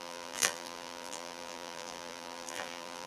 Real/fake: fake